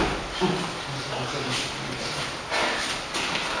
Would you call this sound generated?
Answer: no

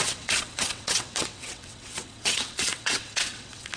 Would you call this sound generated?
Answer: yes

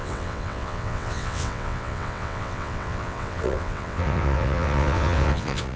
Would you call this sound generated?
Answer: yes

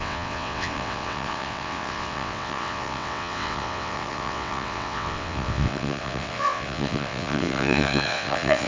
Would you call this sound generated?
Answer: yes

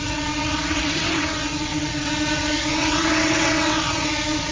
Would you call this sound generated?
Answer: yes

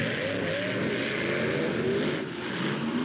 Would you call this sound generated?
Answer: no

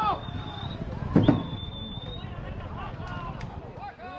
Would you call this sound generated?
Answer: no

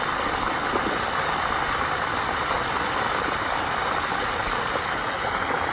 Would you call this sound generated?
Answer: no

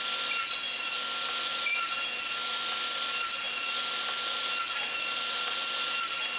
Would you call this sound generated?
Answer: no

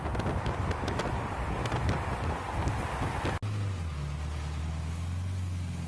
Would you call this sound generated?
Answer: no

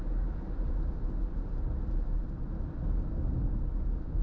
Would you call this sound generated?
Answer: no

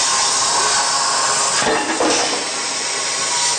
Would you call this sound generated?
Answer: no